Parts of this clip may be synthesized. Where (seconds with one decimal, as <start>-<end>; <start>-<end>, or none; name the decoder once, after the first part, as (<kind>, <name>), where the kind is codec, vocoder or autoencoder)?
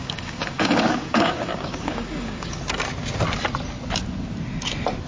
0.0-2.6 (codec, DAC)